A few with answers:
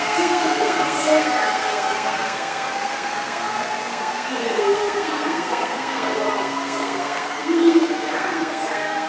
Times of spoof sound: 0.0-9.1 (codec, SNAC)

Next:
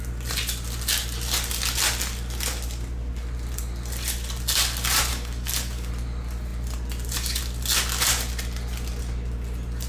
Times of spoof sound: 5.1-5.9 (codec, DAC)

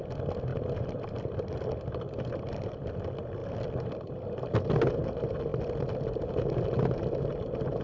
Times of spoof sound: 0.5-3.0 (vocoder, BigVGAN v2); 3.4-4.4; 5.5-6.3

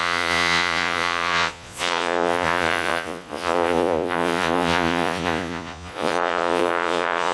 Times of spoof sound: 0.0-7.3 (vocoder, Vocos)

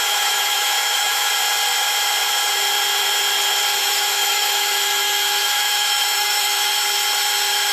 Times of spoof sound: 0.0-1.3 (autoencoder, DAC-VAE); 3.8-6.7

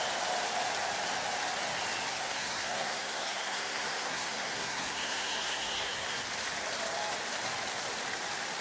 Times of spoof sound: 2.1-6.2 (codec, SNAC)

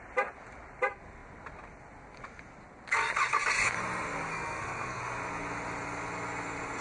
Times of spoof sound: 4.3-5.0 (codec, SNAC)